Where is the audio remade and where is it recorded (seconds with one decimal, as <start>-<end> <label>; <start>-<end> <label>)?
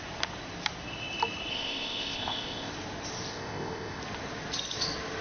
0.0-1.5 recorded; 1.5-2.7 remade; 2.7-3.3 recorded; 3.3-4.0 remade; 4.0-5.2 recorded